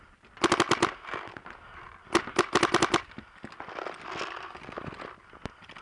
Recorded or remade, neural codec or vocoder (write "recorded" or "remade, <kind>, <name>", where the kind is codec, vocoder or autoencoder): recorded